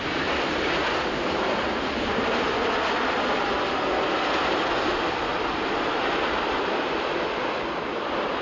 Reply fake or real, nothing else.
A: real